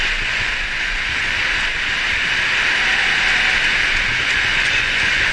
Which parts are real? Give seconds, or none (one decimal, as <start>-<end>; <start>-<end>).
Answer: 1.4-4.2